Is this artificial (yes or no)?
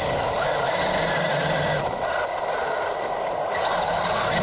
no